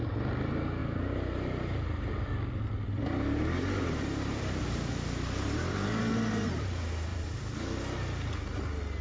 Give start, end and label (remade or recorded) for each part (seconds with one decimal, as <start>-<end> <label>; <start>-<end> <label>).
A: 0.0-0.8 recorded; 0.8-5.9 remade; 5.9-7.1 recorded; 7.1-7.8 remade; 7.8-9.0 recorded